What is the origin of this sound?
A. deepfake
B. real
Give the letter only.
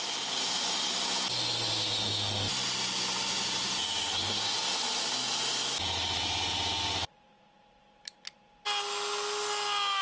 B